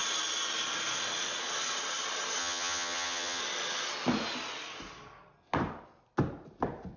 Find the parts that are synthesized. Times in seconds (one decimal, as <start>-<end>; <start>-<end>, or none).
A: 2.4-3.4